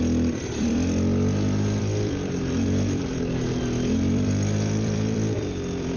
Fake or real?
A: fake